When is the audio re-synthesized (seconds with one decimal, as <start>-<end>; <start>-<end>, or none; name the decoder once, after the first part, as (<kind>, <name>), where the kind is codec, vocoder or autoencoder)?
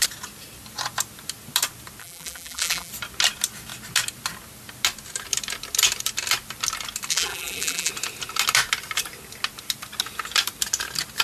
2.0-2.9 (vocoder, BigVGAN v2); 7.1-7.9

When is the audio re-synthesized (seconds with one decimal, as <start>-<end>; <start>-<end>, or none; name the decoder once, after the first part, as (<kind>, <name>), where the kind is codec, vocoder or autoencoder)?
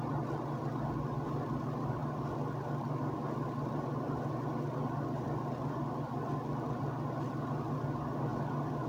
none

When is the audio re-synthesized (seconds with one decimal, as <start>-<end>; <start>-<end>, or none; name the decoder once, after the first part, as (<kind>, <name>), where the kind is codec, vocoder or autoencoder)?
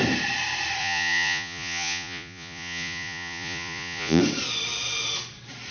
0.8-4.2 (vocoder, Vocos)